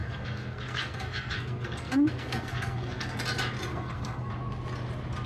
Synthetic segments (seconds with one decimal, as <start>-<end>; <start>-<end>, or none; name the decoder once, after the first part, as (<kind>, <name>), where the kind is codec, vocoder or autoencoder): 0.0-3.2 (codec, SNAC); 3.7-4.3